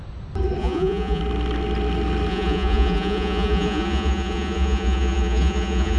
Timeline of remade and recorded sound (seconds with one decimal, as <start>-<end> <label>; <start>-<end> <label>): 0.0-0.6 recorded; 0.6-1.2 remade; 1.2-2.3 recorded; 2.3-6.0 remade